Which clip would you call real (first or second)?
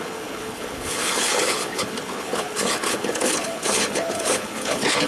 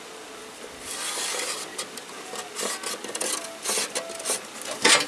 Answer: second